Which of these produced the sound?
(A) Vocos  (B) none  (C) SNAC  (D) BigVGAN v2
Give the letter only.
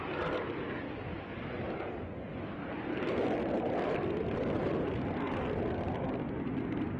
B